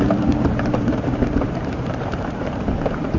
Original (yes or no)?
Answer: no